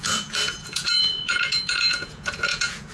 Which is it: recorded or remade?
remade